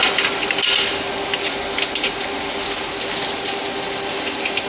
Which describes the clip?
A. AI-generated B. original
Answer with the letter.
B